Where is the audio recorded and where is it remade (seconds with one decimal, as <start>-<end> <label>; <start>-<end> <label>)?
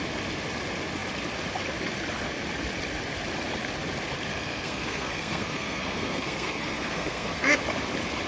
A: 0.0-4.3 recorded; 4.3-7.6 remade; 7.6-8.3 recorded